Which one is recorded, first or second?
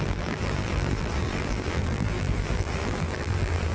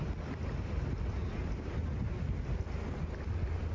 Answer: second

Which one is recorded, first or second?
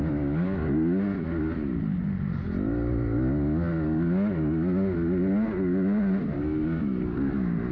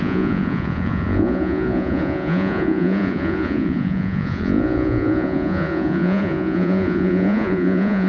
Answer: first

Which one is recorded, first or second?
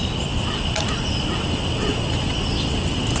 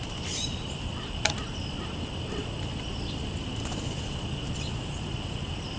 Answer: first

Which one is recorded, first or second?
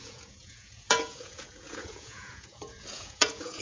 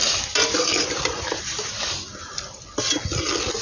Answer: second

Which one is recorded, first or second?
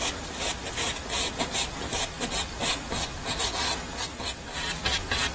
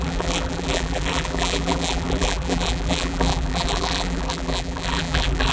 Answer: first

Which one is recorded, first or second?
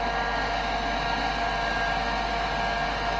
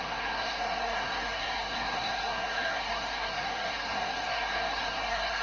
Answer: first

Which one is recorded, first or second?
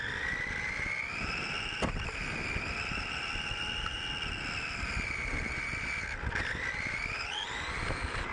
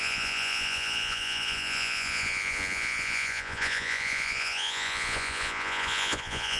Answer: first